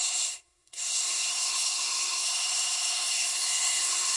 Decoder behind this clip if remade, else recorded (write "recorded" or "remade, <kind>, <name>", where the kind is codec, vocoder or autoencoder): remade, codec, SNAC